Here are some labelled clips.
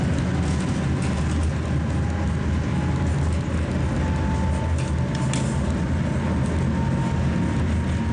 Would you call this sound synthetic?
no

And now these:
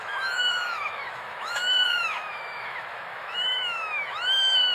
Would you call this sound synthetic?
yes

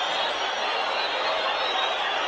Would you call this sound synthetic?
no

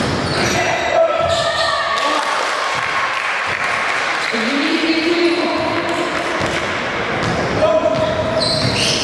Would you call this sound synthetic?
no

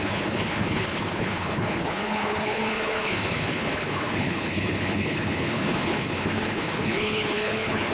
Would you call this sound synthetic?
yes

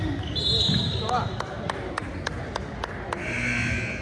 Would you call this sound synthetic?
no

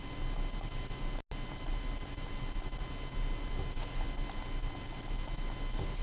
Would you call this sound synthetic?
no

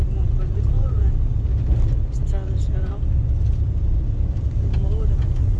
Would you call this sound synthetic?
no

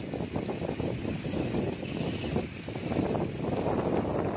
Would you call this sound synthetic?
no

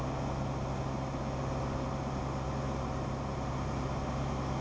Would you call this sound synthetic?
no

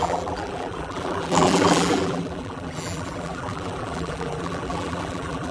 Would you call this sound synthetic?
yes